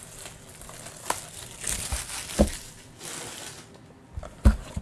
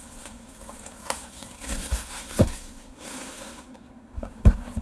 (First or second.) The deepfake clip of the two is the second